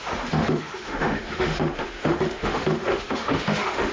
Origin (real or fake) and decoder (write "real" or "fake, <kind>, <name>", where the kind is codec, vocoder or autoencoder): fake, autoencoder, DAC-VAE